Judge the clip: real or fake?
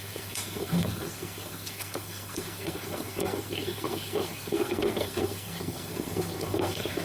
fake